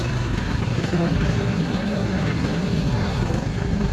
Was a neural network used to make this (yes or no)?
yes